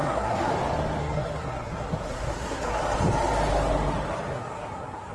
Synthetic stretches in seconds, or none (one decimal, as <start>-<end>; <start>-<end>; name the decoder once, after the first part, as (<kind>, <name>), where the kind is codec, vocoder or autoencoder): 0.0-0.5 (codec, SNAC); 1.0-2.8; 4.3-5.1